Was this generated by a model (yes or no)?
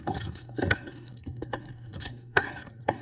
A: yes